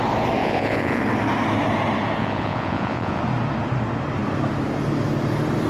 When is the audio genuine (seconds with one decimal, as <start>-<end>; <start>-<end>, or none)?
0.0-0.4; 1.0-2.2; 3.2-5.7